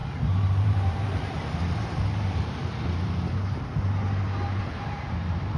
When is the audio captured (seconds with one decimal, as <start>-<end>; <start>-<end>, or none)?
2.6-4.6